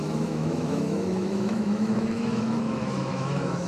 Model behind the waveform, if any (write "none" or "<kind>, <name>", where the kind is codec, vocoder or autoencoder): autoencoder, DAC-VAE